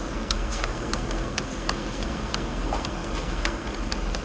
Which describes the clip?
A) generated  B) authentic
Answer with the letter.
A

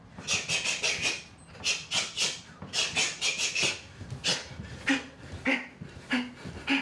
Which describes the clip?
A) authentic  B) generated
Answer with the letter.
A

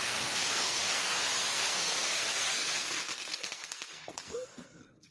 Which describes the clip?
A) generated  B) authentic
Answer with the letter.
A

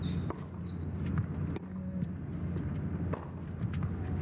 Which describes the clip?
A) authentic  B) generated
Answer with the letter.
A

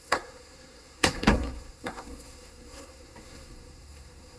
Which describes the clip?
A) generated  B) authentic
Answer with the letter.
A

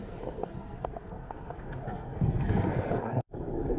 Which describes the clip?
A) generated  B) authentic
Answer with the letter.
A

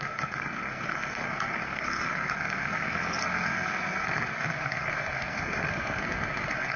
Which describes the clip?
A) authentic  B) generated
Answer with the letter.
B